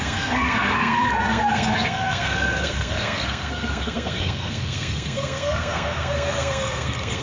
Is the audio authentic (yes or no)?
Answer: no